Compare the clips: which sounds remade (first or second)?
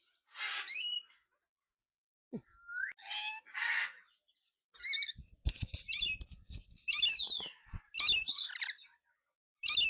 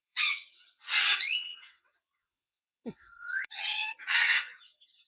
second